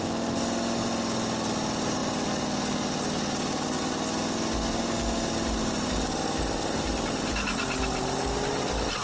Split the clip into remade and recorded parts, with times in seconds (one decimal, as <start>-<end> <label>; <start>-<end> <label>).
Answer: 0.0-9.0 recorded